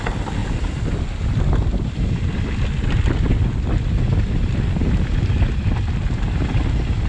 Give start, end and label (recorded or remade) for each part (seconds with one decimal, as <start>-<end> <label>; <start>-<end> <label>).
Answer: 0.0-7.1 recorded